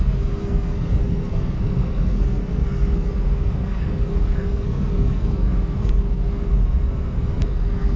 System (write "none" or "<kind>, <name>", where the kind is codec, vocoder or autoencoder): codec, SNAC